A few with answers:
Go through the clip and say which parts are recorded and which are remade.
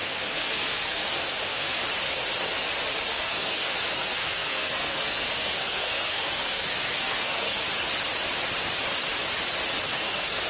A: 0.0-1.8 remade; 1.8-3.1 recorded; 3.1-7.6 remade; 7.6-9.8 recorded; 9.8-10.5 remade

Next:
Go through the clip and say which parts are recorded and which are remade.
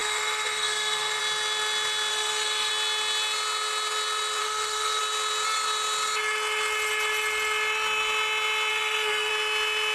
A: 0.0-1.2 remade; 1.2-2.1 recorded; 2.1-2.7 remade; 2.7-4.4 recorded; 4.4-5.0 remade; 5.0-8.7 recorded; 8.7-9.3 remade; 9.3-9.9 recorded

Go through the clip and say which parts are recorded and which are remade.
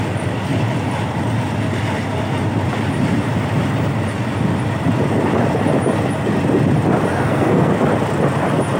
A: 0.0-7.1 recorded; 7.1-7.7 remade; 7.7-8.8 recorded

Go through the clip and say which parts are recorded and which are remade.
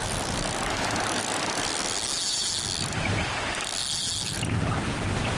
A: 0.0-5.4 recorded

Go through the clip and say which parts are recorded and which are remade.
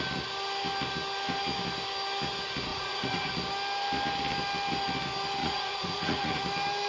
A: 0.0-2.7 recorded; 2.7-3.3 remade; 3.3-5.4 recorded; 5.4-6.4 remade; 6.4-6.9 recorded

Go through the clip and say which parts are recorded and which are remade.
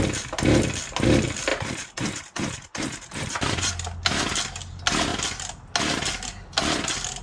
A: 0.0-1.5 recorded; 1.5-3.7 remade; 3.7-7.2 recorded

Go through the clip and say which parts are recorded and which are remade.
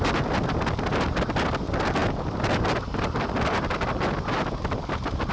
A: 0.0-5.3 recorded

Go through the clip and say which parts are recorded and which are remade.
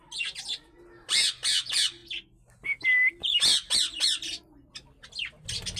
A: 0.0-5.8 recorded